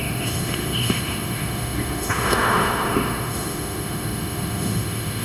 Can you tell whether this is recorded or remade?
remade